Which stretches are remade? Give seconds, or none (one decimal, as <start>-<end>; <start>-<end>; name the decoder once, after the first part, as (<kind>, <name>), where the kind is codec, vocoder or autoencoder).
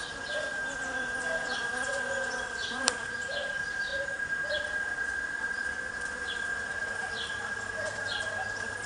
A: 0.0-3.9 (vocoder, BigVGAN v2); 7.1-8.9